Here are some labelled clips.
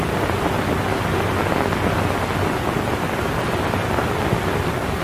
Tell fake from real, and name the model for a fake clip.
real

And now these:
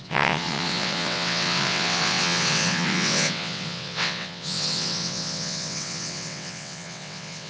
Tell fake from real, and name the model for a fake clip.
fake, vocoder, WaveNeXt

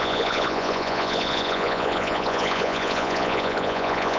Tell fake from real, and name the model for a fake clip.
fake, vocoder, Vocos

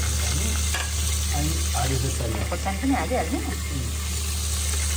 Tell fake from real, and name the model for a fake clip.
real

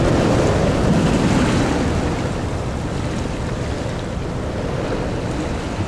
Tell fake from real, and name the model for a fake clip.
real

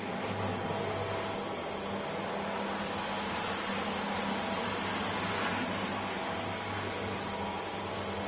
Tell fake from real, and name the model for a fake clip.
real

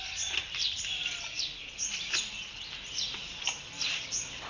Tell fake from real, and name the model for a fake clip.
real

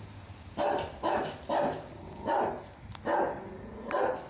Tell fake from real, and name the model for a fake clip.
real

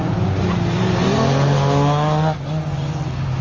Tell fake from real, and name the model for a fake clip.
real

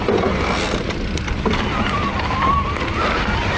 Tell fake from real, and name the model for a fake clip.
real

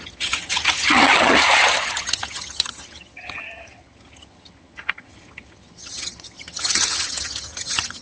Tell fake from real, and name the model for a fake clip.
fake, vocoder, HiFi-GAN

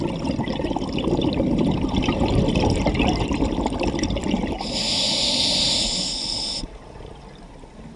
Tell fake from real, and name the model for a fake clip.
real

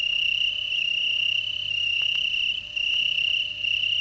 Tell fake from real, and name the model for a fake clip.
real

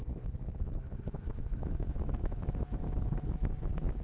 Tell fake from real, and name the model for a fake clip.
fake, autoencoder, DAC-VAE